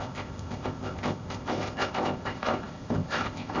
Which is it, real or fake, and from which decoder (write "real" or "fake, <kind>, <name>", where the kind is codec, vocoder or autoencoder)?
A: fake, codec, ZipCodec